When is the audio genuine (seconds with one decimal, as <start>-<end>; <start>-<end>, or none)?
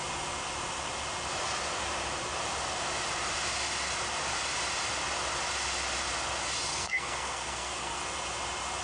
0.0-6.7; 8.0-8.8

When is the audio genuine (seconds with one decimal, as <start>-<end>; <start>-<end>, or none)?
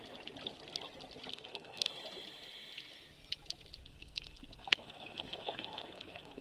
0.0-1.3; 1.9-3.8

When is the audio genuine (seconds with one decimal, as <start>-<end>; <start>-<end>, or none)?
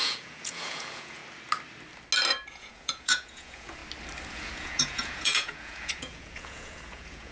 1.2-2.5; 3.8-4.3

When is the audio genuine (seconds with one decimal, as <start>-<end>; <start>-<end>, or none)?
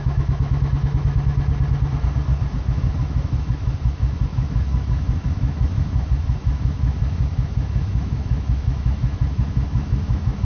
1.5-2.5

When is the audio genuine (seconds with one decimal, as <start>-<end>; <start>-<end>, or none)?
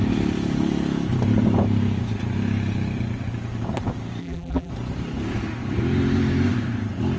0.0-4.2; 4.7-7.2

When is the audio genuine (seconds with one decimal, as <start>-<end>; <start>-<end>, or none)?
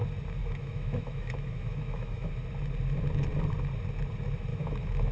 0.0-0.4; 2.3-4.5